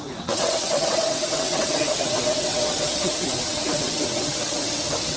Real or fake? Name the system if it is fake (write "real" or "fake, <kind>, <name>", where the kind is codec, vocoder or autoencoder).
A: fake, vocoder, WaveNeXt